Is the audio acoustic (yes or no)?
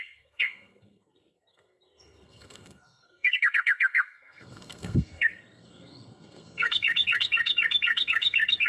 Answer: no